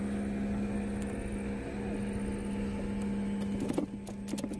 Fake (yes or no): no